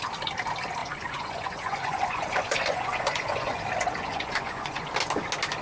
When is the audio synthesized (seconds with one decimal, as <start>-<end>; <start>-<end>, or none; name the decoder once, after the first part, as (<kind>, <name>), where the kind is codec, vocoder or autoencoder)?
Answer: 0.8-3.6 (vocoder, Vocos); 4.0-4.9